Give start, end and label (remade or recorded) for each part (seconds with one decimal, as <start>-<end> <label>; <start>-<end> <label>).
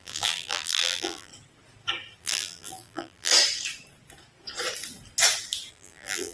0.0-1.3 remade; 1.3-2.2 recorded; 2.2-3.3 remade; 3.3-5.7 recorded; 5.7-6.3 remade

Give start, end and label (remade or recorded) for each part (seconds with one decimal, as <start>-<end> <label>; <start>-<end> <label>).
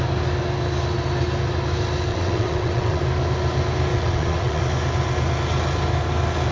0.0-2.1 recorded; 2.1-3.0 remade; 3.0-3.9 recorded; 3.9-4.6 remade; 4.6-6.5 recorded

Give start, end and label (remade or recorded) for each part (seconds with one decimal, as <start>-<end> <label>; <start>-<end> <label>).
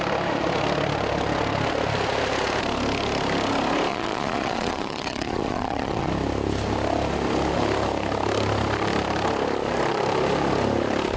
0.0-3.9 recorded; 3.9-6.1 remade; 6.1-11.2 recorded